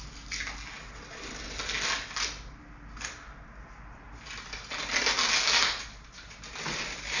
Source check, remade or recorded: recorded